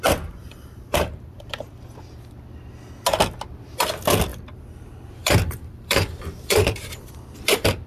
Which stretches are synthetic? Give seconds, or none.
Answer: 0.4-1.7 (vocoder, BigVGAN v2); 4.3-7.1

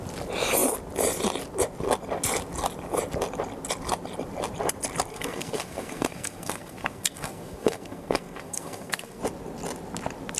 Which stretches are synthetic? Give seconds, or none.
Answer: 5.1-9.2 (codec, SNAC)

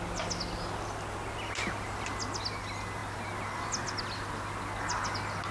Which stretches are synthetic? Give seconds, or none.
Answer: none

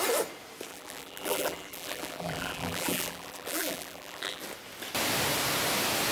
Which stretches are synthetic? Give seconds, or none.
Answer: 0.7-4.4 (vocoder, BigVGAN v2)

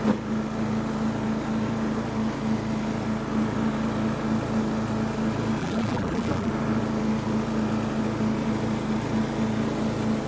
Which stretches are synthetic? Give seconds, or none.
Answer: 5.6-6.5 (vocoder, BigVGAN v2)

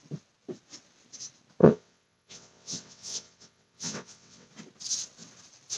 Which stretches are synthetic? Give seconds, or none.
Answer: 1.6-4.5 (vocoder, WaveNeXt)

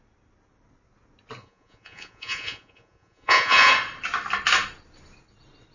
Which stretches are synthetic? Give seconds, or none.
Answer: 1.4-3.7 (vocoder, Vocos)